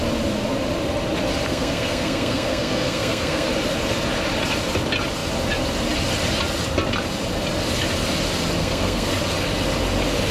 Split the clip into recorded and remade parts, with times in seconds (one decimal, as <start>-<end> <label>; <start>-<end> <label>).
0.0-1.5 recorded; 1.5-3.5 remade; 3.5-8.6 recorded; 8.6-9.1 remade; 9.1-10.3 recorded

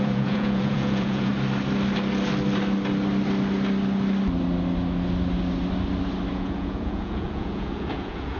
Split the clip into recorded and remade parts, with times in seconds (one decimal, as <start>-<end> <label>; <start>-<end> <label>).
0.0-1.3 remade; 1.3-6.3 recorded; 6.3-8.4 remade

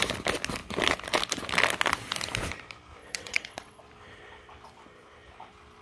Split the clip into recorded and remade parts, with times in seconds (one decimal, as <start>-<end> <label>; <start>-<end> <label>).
0.0-3.0 recorded; 3.0-3.8 remade; 3.8-5.8 recorded

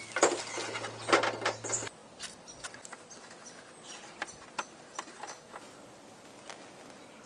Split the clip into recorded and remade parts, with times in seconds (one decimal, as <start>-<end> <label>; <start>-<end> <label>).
0.0-7.3 recorded